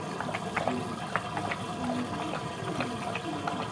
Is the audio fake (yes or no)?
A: no